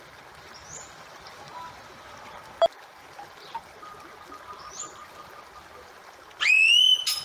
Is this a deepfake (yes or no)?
no